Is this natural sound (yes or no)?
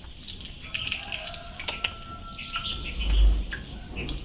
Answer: yes